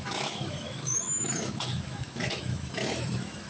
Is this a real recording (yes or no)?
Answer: no